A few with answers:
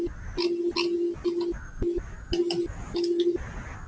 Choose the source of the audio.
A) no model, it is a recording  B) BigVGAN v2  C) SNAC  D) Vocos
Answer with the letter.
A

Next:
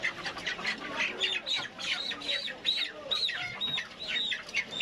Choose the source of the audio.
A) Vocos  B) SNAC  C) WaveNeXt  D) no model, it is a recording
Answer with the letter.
D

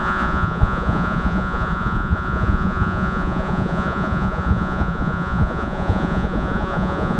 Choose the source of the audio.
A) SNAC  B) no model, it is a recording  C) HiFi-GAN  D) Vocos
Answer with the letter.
D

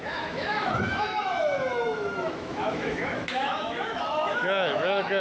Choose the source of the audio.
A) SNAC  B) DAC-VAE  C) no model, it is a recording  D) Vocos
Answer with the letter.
B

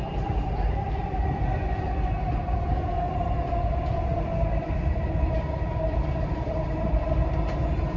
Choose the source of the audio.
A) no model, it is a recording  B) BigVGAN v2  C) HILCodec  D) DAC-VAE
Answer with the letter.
B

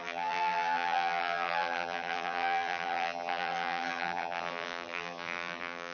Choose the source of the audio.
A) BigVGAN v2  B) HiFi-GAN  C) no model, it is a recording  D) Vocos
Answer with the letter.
A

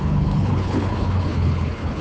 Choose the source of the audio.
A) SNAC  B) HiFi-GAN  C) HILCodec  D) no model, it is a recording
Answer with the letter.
C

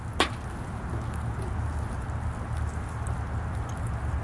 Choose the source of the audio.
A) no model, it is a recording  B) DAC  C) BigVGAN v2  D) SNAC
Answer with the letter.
A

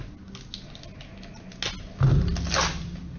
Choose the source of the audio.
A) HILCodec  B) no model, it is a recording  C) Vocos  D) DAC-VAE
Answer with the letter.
B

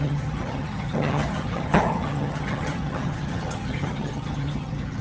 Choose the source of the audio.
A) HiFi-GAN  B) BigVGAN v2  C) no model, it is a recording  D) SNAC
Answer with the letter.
A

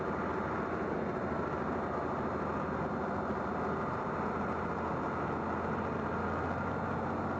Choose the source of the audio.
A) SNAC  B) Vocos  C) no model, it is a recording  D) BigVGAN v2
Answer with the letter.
C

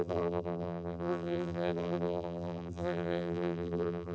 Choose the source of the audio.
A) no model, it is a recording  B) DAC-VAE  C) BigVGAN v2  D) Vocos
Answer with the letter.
C